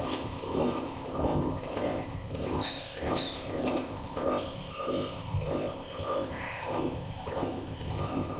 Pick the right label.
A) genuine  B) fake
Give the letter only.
B